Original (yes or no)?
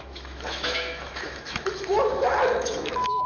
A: no